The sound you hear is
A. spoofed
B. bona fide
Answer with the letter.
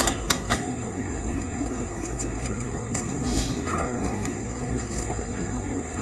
A